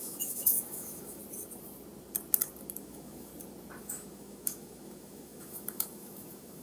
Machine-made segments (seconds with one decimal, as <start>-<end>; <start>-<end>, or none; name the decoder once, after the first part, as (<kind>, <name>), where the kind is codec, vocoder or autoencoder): 0.0-1.2 (autoencoder, DAC-VAE); 2.8-3.3; 3.8-6.6